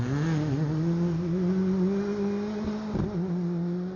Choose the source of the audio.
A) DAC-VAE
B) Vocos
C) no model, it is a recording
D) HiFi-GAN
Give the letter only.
C